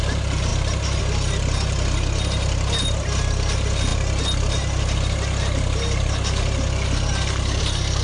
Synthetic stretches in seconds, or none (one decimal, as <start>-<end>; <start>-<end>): none